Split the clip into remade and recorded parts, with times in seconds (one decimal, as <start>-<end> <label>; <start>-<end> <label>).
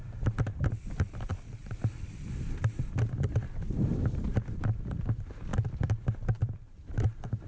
0.0-1.6 recorded; 1.6-5.0 remade; 5.0-5.5 recorded; 5.5-7.5 remade